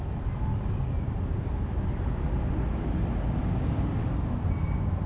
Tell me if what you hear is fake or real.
real